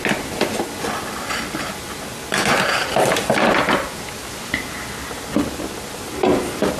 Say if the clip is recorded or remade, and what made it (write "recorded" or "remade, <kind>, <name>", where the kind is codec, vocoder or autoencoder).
recorded